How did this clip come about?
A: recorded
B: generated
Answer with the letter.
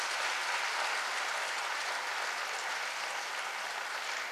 A